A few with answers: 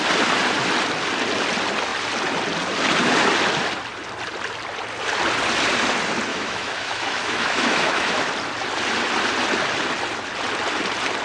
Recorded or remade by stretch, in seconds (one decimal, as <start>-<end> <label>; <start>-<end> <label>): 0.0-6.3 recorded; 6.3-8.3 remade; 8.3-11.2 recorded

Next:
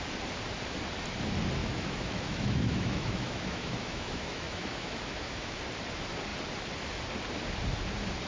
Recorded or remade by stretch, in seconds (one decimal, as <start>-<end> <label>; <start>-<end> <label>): 0.0-1.6 recorded; 1.6-5.6 remade; 5.6-8.3 recorded

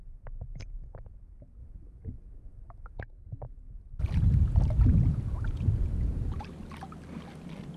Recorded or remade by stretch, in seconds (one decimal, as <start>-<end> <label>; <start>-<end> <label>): 0.0-7.8 recorded